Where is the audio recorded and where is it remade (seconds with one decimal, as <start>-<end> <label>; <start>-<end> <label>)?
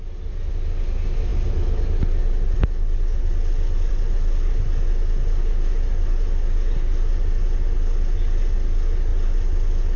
0.0-10.0 recorded